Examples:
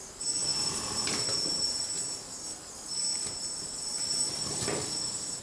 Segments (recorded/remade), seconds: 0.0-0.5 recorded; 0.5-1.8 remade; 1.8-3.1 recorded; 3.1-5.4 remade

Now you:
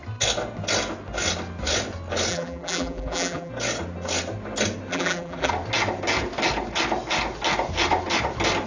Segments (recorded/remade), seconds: 0.0-2.3 recorded; 2.3-3.5 remade; 3.5-4.9 recorded; 4.9-5.5 remade; 5.5-8.7 recorded

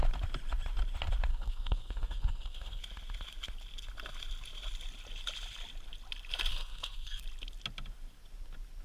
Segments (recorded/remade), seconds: 0.0-1.3 recorded; 1.3-2.8 remade; 2.8-6.5 recorded; 6.5-7.2 remade; 7.2-8.8 recorded

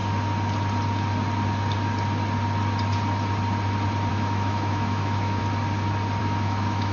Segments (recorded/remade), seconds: 0.0-4.1 recorded; 4.1-5.4 remade; 5.4-6.2 recorded; 6.2-6.9 remade

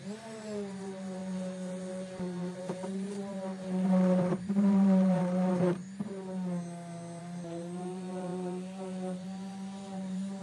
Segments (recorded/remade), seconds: 0.0-5.8 remade; 5.8-7.2 recorded; 7.2-10.4 remade

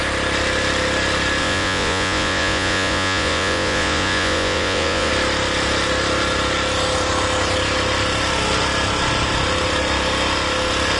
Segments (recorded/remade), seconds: 0.0-1.4 recorded; 1.4-5.1 remade; 5.1-11.0 recorded

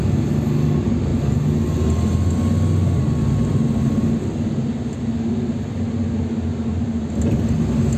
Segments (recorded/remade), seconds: 0.0-8.0 recorded

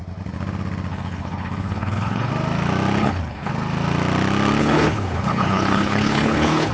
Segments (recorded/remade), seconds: 0.0-0.9 recorded; 0.9-2.3 remade; 2.3-3.0 recorded; 3.0-3.5 remade; 3.5-4.6 recorded; 4.6-6.7 remade